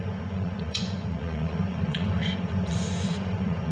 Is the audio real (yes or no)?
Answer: no